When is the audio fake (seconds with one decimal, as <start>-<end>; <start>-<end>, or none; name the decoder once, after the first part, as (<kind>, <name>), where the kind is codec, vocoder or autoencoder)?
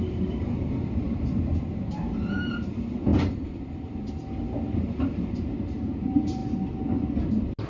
0.0-6.4 (vocoder, BigVGAN v2)